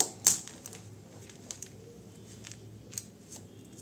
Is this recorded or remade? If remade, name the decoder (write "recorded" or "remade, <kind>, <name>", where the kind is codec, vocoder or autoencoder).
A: recorded